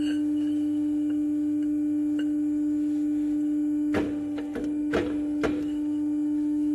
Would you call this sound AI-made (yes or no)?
no